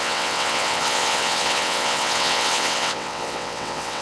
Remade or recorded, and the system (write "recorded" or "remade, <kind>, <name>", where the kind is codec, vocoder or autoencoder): remade, vocoder, WaveNeXt